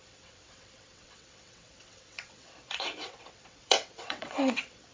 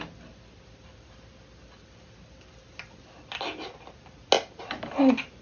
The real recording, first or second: second